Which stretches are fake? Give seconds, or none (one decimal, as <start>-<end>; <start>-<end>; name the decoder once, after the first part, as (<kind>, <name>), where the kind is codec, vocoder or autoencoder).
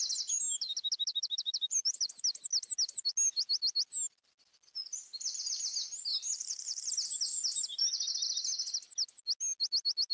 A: 1.1-2.1 (vocoder, BigVGAN v2); 4.5-5.4; 6.1-6.9